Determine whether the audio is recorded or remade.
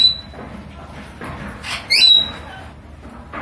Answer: recorded